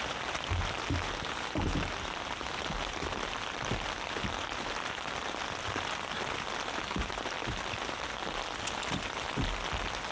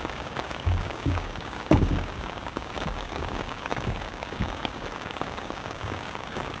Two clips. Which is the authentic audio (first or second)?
first